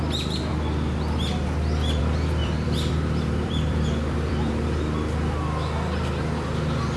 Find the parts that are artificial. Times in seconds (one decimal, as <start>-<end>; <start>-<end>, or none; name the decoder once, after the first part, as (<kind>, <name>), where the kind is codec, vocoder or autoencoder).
2.4-4.5 (vocoder, BigVGAN v2)